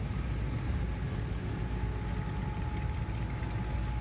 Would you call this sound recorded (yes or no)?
yes